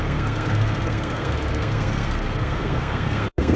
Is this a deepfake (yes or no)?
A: yes